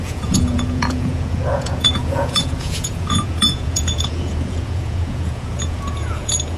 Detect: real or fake fake